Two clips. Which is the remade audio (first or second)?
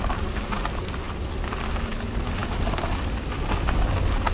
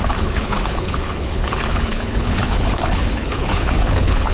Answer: second